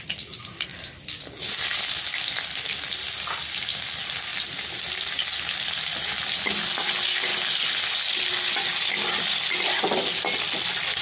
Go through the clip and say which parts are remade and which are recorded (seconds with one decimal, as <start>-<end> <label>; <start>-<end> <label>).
0.0-11.0 recorded